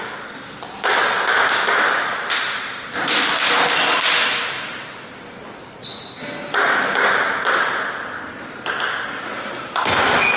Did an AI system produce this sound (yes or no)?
no